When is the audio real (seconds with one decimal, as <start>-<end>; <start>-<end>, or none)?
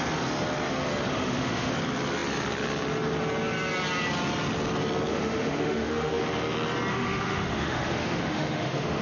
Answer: 0.0-1.1; 1.7-5.1; 6.2-6.9